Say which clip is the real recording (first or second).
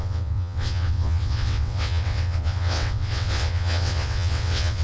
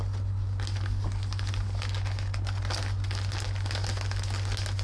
second